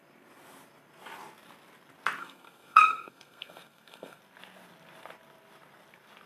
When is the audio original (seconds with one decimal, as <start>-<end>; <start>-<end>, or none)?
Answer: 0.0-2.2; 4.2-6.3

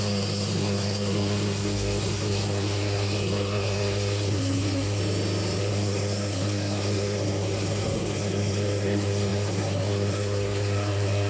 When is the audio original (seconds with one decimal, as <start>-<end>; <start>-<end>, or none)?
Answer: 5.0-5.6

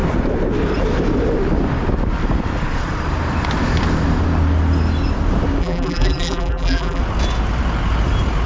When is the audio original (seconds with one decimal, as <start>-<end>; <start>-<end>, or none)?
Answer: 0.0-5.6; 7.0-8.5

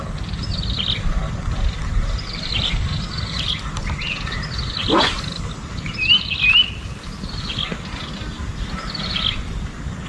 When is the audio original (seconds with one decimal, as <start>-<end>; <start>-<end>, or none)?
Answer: 0.0-10.1

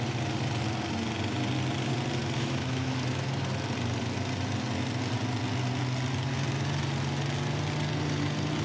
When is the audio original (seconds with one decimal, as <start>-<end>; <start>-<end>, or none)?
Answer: 0.0-2.2; 3.5-8.6